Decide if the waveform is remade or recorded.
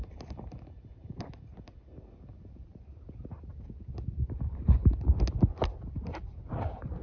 recorded